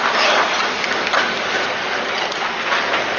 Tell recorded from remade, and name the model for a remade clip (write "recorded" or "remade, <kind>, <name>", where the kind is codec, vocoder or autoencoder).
recorded